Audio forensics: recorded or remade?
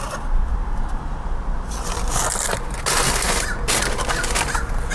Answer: recorded